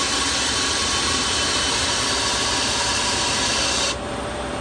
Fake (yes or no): yes